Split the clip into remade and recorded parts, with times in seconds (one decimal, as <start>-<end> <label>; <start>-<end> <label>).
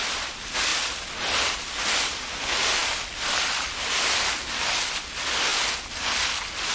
0.0-2.8 recorded; 2.8-4.2 remade; 4.2-5.5 recorded; 5.5-6.2 remade; 6.2-6.7 recorded